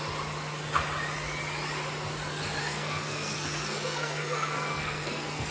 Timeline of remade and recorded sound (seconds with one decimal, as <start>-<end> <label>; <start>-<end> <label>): 0.0-2.6 recorded; 2.6-5.5 remade